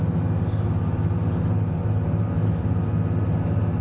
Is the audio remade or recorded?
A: recorded